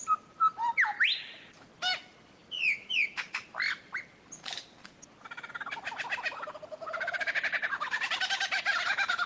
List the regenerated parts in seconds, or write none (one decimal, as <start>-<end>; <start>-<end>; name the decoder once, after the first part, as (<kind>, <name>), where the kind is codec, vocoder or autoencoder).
none